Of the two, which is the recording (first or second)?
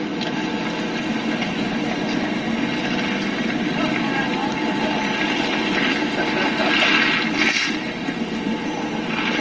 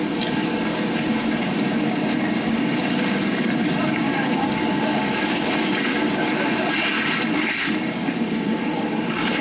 first